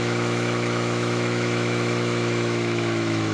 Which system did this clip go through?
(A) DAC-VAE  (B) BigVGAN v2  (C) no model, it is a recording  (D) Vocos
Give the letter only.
A